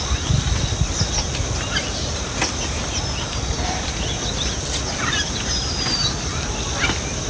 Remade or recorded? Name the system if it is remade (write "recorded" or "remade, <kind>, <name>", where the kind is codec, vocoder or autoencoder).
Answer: recorded